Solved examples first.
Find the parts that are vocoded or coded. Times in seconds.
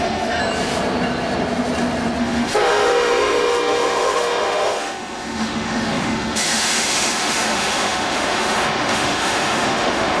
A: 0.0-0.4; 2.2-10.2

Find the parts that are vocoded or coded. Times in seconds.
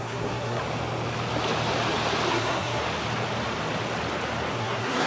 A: 0.0-0.6; 2.3-2.8; 4.5-5.1